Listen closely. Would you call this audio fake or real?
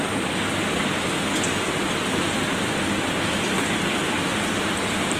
real